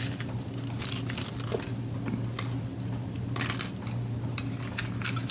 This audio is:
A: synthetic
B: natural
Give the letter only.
A